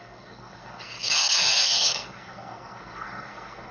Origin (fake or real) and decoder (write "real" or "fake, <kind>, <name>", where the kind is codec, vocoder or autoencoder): fake, codec, SNAC